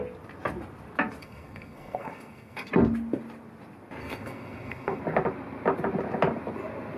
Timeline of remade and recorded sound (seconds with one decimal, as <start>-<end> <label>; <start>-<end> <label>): 0.0-1.2 recorded; 1.2-2.7 remade; 2.7-4.0 recorded; 4.0-5.0 remade; 5.0-7.0 recorded